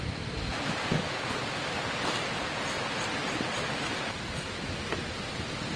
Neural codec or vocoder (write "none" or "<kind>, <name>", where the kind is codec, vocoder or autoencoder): none